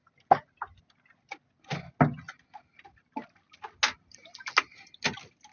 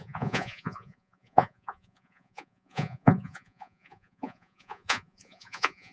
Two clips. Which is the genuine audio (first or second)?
first